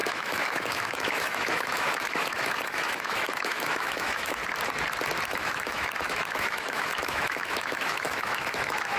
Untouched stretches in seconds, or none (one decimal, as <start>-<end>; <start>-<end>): 4.4-5.2